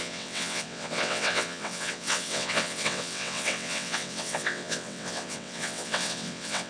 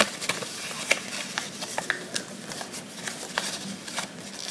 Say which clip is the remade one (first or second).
first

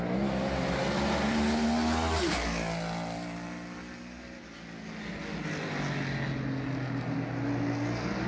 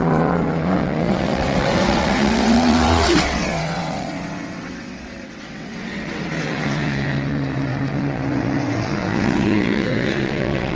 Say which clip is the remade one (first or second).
second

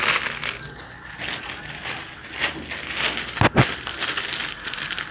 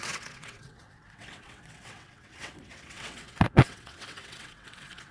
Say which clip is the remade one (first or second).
second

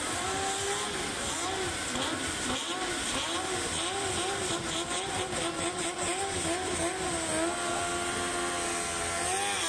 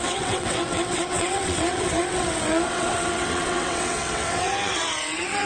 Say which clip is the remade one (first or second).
second